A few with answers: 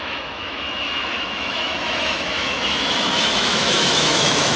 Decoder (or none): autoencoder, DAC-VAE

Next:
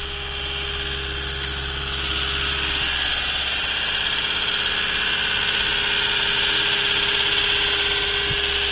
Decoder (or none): none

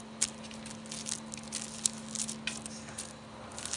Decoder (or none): none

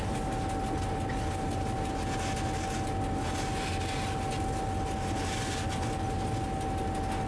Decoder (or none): none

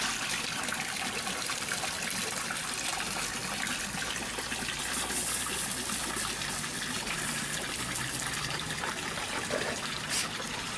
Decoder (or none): none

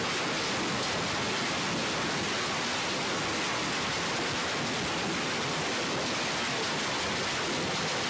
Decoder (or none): none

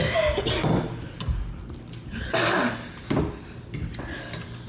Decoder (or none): none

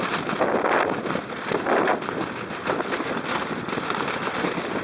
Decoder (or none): none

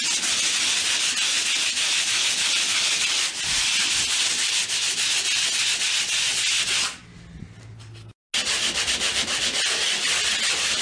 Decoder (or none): none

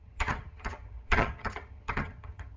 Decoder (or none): vocoder, HiFi-GAN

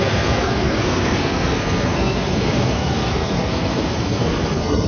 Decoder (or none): codec, SNAC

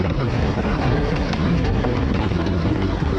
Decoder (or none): codec, SNAC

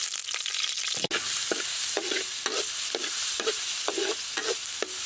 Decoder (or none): none